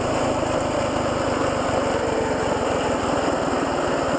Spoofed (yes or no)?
no